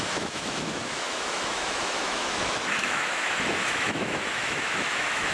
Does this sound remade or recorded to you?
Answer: remade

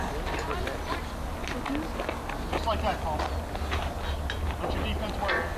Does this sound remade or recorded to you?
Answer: recorded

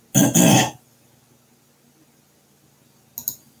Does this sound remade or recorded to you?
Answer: recorded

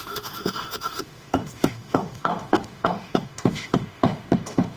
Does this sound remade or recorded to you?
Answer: remade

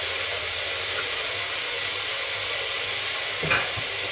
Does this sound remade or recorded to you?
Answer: recorded